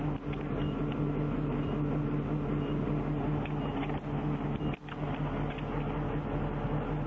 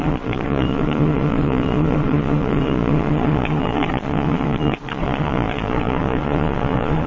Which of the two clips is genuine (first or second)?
first